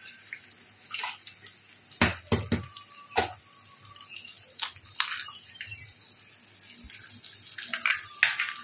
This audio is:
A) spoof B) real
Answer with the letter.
B